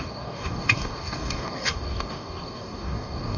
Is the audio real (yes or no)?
no